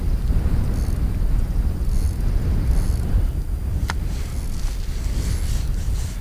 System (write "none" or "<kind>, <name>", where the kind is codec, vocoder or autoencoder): none